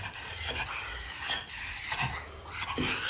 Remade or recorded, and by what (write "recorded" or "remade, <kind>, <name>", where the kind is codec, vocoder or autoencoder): recorded